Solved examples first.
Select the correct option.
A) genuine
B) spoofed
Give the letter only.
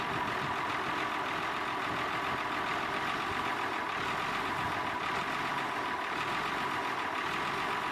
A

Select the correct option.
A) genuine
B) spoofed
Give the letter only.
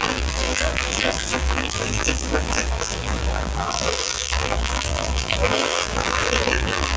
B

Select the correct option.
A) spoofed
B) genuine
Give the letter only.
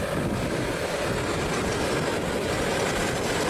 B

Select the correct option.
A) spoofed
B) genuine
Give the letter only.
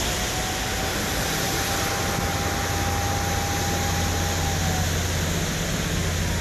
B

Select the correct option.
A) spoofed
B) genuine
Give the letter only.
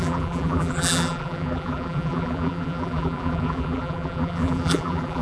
A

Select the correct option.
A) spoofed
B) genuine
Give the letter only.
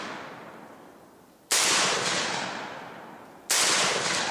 B